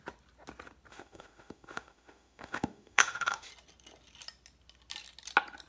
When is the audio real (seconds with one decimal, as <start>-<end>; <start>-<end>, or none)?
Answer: 0.0-0.9; 3.5-5.7